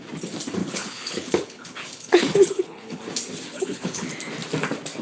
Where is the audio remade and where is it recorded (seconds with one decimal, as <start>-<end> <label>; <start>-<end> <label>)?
0.0-0.6 recorded; 0.6-3.0 remade; 3.0-3.5 recorded; 3.5-4.1 remade; 4.1-5.0 recorded

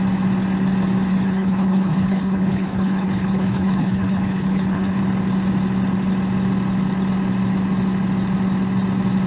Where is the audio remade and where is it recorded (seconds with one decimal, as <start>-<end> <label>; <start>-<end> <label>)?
0.0-1.1 recorded; 1.1-5.0 remade; 5.0-9.3 recorded